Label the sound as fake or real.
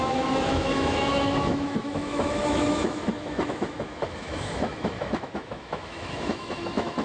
fake